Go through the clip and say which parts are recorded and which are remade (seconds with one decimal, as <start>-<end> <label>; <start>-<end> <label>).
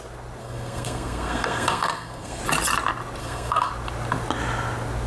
0.0-0.4 recorded; 0.4-2.4 remade; 2.4-3.2 recorded; 3.2-3.7 remade; 3.7-5.1 recorded